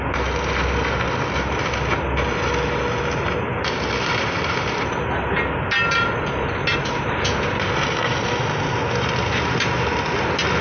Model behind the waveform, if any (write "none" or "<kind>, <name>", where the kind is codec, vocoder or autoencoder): none